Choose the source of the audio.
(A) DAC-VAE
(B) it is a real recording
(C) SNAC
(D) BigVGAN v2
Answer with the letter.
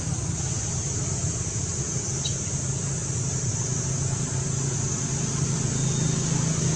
B